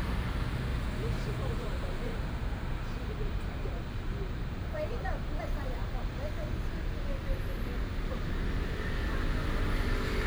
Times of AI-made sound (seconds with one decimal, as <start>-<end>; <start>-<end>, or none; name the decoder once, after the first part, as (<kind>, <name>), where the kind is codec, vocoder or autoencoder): 0.7-5.4 (vocoder, BigVGAN v2); 7.2-8.3

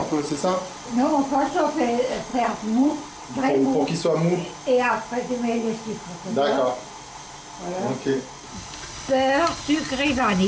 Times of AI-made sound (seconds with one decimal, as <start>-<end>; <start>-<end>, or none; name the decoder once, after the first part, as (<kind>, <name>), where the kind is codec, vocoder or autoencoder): 0.0-1.2 (vocoder, WaveNeXt); 2.3-3.3

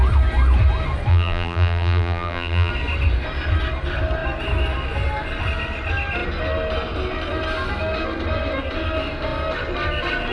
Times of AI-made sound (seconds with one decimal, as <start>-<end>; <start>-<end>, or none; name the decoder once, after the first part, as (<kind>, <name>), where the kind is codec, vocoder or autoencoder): 1.1-2.7 (vocoder, BigVGAN v2)

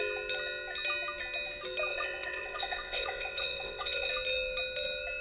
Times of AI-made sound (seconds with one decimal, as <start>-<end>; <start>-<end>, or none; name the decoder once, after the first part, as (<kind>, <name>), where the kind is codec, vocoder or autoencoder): 1.9-4.1 (vocoder, WaveNeXt)

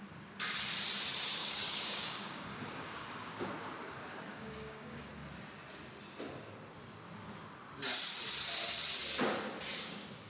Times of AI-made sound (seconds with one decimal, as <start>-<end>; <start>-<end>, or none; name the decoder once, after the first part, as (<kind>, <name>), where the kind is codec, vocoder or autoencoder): 1.4-3.4 (codec, DAC); 4.3-5.1